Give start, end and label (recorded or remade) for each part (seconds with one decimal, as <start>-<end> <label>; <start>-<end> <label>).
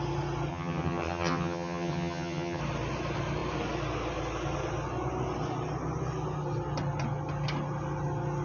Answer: 0.0-0.5 recorded; 0.5-2.6 remade; 2.6-8.4 recorded